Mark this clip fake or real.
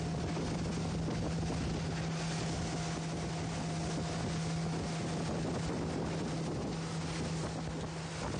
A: real